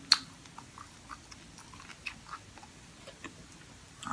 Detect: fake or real real